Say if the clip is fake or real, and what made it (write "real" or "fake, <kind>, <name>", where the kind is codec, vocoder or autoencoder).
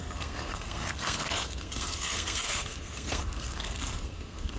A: fake, codec, SNAC